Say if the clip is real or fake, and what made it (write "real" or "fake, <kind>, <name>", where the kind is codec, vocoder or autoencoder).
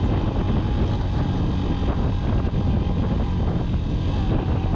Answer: real